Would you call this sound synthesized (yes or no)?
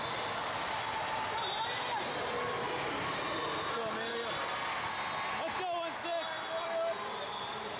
no